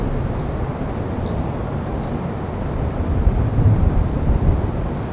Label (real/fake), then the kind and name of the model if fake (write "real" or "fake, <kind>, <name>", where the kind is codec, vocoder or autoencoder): real